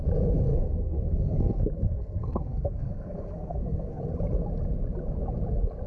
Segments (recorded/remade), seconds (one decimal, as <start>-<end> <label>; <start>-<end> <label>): 0.0-0.5 recorded; 0.5-4.0 remade; 4.0-5.9 recorded